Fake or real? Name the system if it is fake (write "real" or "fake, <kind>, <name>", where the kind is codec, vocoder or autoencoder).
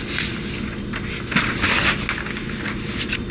real